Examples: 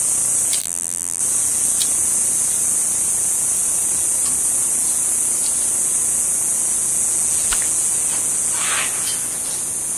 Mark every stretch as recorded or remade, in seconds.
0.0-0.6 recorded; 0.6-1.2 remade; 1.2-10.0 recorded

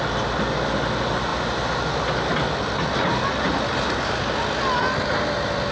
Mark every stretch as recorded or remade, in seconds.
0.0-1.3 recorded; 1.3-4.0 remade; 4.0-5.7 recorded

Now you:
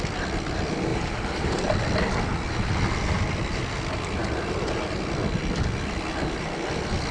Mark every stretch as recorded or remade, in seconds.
0.0-0.9 recorded; 0.9-1.6 remade; 1.6-7.1 recorded